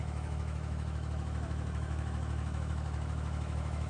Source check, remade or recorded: remade